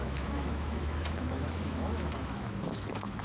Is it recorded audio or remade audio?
remade